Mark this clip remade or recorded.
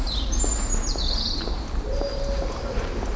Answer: recorded